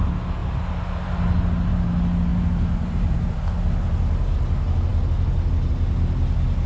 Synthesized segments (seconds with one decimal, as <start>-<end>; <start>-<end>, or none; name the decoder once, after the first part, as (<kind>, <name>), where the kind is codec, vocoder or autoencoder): 2.3-3.4 (vocoder, BigVGAN v2)